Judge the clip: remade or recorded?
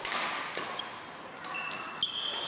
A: recorded